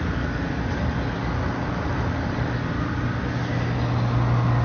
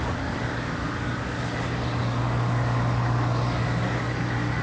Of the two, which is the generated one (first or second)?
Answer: second